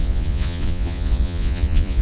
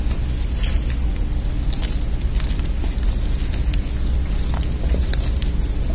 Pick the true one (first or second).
second